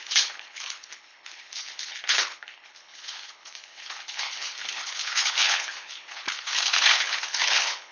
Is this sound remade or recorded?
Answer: remade